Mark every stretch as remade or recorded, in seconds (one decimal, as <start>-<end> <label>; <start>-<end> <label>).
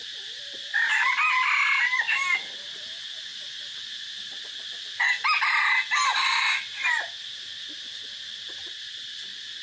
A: 0.0-9.6 recorded